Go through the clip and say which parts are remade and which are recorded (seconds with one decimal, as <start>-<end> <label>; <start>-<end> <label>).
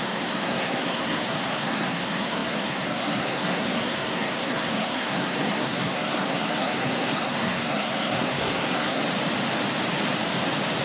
0.0-9.0 remade; 9.0-10.8 recorded